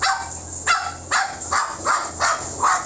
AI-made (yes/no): no